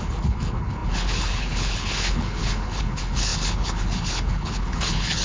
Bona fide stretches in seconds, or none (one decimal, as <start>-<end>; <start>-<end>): none